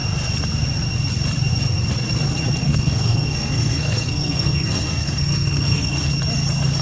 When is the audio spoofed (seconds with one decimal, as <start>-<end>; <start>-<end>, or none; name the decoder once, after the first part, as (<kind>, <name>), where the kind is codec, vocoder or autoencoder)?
2.6-6.1 (codec, SNAC)